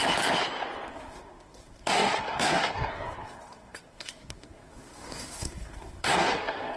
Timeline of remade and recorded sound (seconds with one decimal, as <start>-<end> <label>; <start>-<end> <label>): 0.0-0.9 recorded; 0.9-6.8 remade